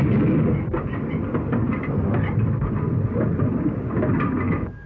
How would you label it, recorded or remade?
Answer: recorded